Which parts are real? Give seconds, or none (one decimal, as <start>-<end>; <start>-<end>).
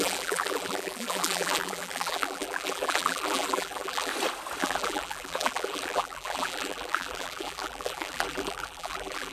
4.1-4.6